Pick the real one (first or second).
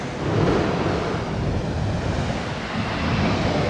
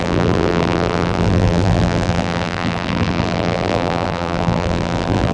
first